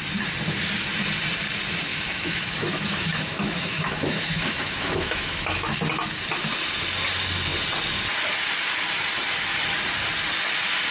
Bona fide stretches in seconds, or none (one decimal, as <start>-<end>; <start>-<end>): 0.0-1.9; 5.7-10.9